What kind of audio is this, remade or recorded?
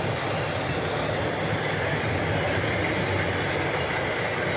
recorded